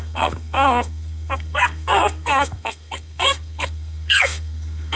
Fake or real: fake